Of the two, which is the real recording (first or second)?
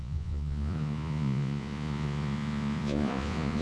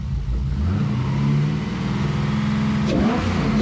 second